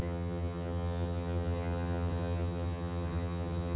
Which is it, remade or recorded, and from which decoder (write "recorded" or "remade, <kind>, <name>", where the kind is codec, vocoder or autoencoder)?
remade, vocoder, HiFi-GAN